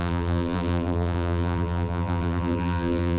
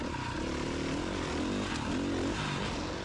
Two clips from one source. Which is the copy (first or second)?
first